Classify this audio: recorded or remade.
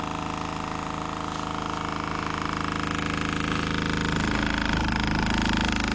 recorded